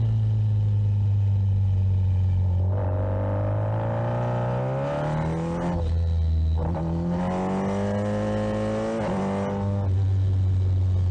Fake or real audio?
real